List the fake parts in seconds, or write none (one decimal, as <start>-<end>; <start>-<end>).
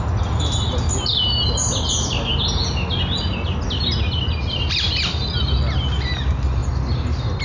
none